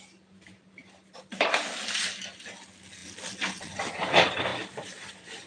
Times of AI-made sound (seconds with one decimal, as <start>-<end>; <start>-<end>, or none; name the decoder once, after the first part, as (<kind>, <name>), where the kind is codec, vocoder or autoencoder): 0.8-2.2 (vocoder, BigVGAN v2); 3.0-4.0; 4.5-5.5